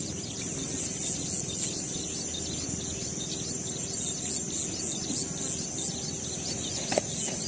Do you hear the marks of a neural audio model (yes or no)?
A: no